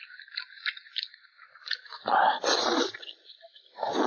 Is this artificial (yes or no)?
no